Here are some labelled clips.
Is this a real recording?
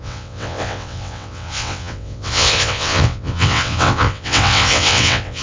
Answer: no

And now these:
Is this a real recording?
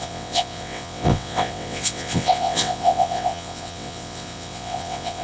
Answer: no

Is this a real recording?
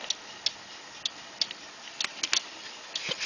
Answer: yes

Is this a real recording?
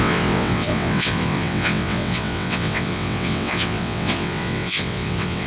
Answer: no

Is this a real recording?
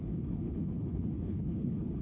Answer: no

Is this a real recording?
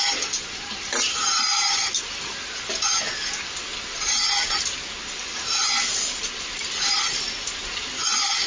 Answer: yes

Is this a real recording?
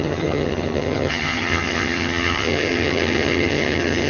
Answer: no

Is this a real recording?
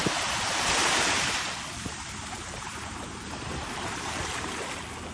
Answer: no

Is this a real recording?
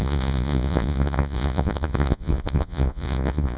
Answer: no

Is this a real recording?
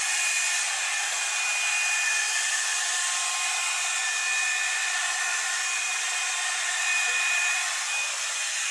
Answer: yes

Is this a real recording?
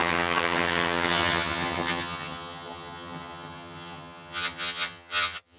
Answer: no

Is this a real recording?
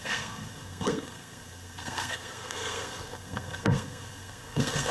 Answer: no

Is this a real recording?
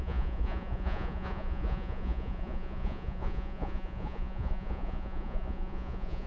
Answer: no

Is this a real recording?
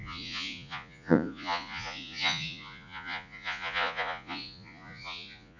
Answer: no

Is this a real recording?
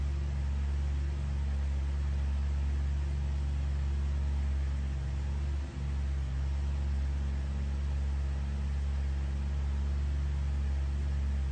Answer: yes